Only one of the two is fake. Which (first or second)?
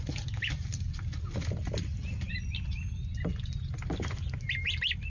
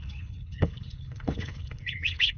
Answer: second